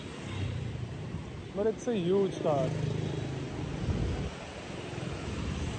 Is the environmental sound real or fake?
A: real